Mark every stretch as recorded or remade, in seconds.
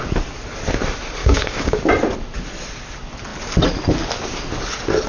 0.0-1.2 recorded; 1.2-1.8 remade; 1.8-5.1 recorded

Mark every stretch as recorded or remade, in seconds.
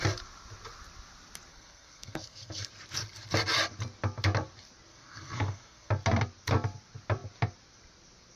0.0-1.5 recorded; 1.5-2.7 remade; 2.7-4.9 recorded; 4.9-5.9 remade; 5.9-8.4 recorded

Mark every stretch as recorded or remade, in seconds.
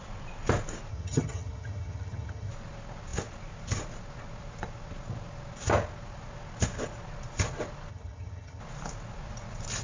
0.0-0.9 recorded; 0.9-2.5 remade; 2.5-7.9 recorded; 7.9-8.6 remade; 8.6-9.8 recorded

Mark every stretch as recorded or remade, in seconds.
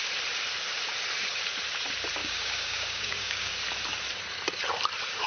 0.0-2.2 recorded; 2.2-3.5 remade; 3.5-5.3 recorded